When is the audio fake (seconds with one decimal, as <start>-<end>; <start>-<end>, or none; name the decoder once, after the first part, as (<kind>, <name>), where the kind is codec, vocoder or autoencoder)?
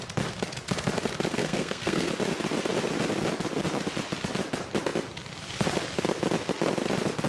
1.3-2.1 (codec, SNAC)